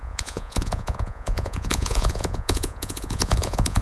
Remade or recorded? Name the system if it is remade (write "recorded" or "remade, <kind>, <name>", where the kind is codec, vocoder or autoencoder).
remade, vocoder, Vocos